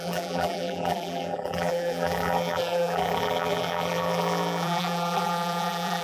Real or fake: fake